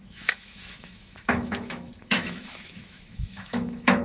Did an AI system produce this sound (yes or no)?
yes